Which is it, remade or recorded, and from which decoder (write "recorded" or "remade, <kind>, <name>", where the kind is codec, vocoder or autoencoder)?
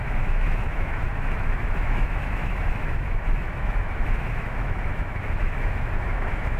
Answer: remade, autoencoder, DAC-VAE